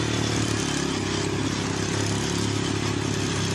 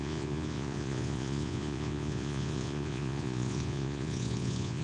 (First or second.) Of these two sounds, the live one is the first